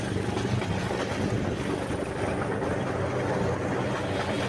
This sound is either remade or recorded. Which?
recorded